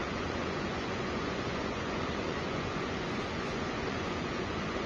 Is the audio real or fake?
fake